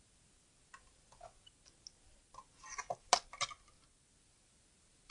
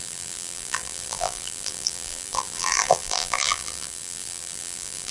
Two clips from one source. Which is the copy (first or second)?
second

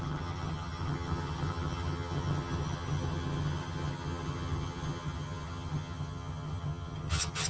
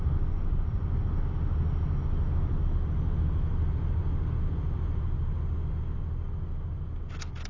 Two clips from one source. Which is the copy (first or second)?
first